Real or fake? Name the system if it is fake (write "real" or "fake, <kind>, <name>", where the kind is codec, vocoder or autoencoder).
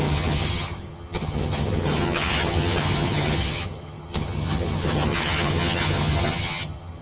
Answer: fake, vocoder, HiFi-GAN